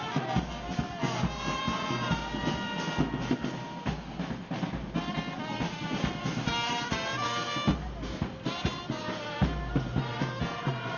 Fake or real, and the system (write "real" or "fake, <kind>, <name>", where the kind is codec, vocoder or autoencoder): real